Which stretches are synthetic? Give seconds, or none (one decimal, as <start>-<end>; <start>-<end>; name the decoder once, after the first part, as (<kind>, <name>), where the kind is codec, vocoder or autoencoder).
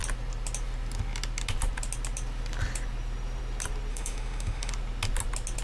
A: 3.9-4.7 (autoencoder, DAC-VAE)